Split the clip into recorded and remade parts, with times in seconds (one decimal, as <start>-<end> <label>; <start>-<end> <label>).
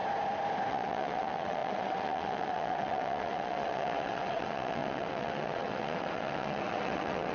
0.0-0.7 recorded; 0.7-7.3 remade